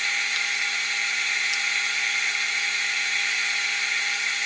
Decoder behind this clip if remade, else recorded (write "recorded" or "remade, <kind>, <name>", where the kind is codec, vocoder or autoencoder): recorded